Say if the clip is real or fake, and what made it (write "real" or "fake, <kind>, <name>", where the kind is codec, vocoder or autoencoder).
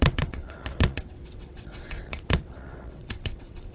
fake, vocoder, WaveNeXt